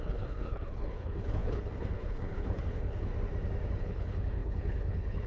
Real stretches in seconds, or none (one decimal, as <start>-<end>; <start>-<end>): 3.1-3.8